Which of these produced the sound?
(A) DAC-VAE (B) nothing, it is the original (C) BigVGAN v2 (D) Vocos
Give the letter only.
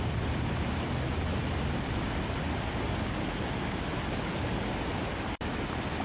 B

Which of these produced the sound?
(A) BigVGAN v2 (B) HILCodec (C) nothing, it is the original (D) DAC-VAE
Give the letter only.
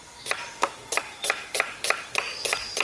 C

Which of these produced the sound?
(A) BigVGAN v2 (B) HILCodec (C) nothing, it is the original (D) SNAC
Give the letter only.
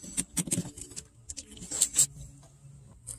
C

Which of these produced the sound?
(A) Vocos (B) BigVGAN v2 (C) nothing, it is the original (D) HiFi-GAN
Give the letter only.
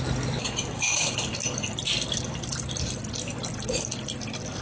C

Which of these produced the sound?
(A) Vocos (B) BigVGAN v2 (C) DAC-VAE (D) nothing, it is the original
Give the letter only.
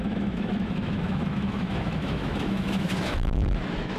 C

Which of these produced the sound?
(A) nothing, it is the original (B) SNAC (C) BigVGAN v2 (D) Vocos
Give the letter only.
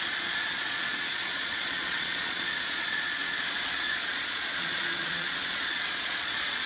D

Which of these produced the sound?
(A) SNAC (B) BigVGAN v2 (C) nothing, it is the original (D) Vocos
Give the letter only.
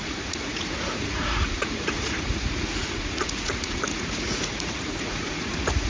D